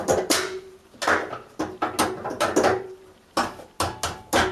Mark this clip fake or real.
real